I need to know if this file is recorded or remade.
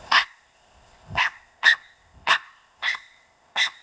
remade